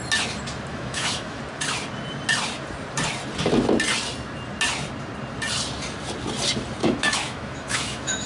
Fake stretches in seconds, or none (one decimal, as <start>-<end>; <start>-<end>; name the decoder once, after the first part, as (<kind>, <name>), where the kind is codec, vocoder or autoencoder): 0.7-1.4 (autoencoder, DAC-VAE); 6.8-8.3